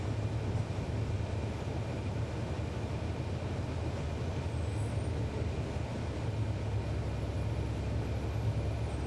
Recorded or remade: recorded